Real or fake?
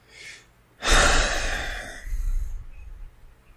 real